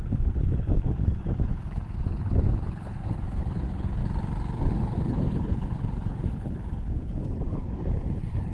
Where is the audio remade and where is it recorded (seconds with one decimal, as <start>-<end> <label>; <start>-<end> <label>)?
0.0-4.0 remade; 4.0-4.7 recorded; 4.7-8.5 remade